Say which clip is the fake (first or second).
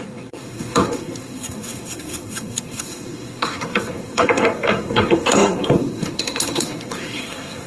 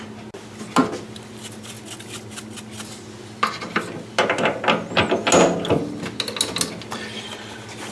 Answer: first